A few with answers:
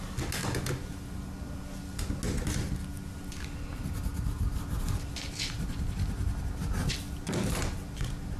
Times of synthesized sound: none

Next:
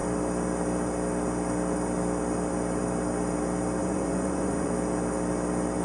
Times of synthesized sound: 3.8-4.7 (vocoder, Vocos)

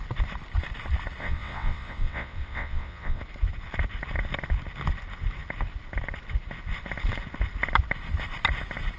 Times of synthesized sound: 1.2-3.2 (vocoder, WaveNeXt)

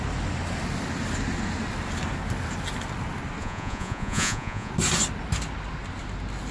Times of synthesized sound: 3.4-4.7 (vocoder, Vocos)

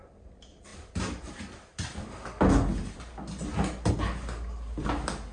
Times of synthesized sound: none

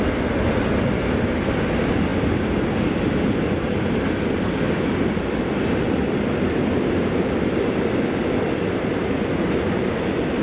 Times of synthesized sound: none

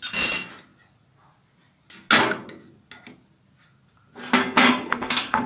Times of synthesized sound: 4.4-5.5 (codec, SNAC)